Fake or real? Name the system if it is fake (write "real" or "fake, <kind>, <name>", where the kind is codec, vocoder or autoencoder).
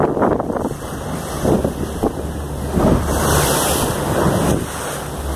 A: real